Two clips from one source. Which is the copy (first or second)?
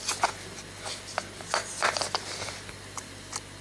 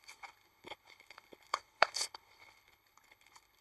second